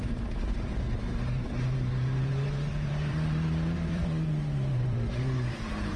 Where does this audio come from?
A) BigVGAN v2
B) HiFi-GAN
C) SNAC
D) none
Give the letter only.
A